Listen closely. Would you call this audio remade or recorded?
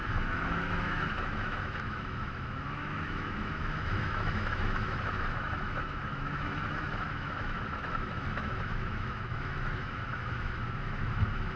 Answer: remade